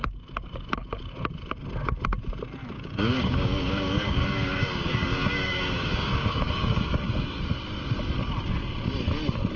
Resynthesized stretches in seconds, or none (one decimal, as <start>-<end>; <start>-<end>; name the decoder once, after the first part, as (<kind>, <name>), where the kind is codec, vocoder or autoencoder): 2.6-7.4 (codec, DAC)